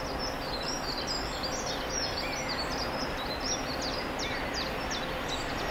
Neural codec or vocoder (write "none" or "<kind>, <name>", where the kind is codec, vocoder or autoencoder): none